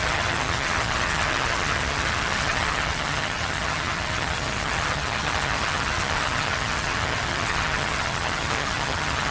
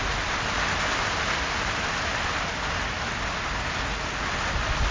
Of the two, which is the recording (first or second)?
second